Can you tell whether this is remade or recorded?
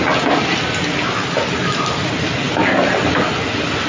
recorded